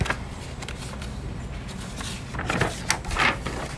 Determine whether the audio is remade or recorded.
recorded